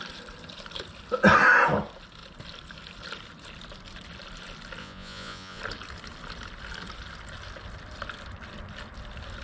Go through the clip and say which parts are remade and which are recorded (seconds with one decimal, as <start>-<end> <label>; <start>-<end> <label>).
0.0-4.8 recorded; 4.8-5.6 remade; 5.6-9.4 recorded